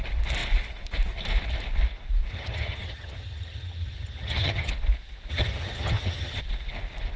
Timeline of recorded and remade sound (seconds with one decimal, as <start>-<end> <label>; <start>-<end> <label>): 0.0-2.3 recorded; 2.3-4.7 remade; 4.7-5.3 recorded; 5.3-6.4 remade; 6.4-7.2 recorded